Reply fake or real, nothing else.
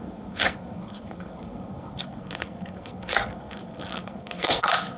fake